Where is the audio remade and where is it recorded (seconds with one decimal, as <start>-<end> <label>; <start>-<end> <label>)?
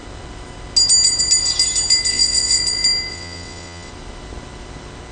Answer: 0.0-2.1 recorded; 2.1-2.6 remade; 2.6-3.1 recorded; 3.1-3.9 remade; 3.9-5.1 recorded